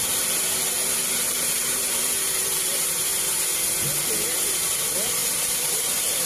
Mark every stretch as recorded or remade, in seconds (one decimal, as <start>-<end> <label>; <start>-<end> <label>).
0.0-3.1 remade; 3.1-4.6 recorded; 4.6-6.3 remade